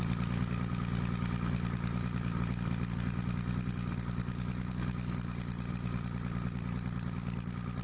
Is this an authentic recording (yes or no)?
yes